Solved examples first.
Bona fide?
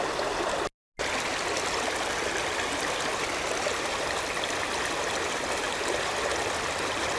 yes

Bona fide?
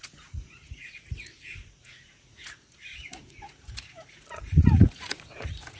no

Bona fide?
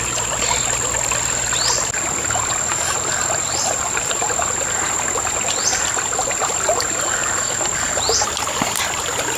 yes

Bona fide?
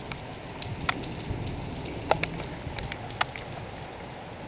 yes